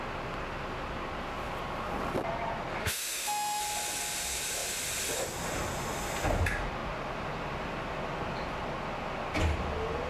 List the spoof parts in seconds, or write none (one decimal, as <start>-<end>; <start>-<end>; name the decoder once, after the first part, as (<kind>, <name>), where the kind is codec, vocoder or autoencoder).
2.8-3.6 (autoencoder, DAC-VAE)